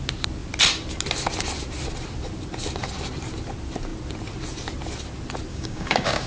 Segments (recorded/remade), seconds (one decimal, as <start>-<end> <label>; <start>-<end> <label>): 0.0-5.5 recorded; 5.5-6.3 remade